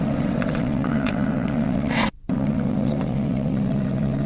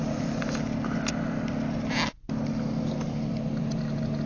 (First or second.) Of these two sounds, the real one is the second